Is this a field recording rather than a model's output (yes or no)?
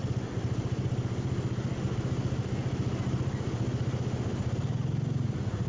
yes